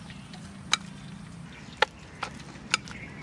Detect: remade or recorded recorded